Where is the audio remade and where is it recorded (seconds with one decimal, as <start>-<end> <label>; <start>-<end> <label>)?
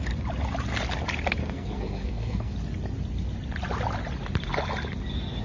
0.0-1.4 recorded; 1.4-2.5 remade; 2.5-5.4 recorded